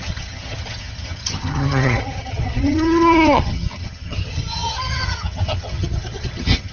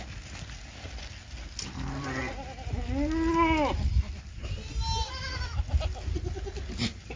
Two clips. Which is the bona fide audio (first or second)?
second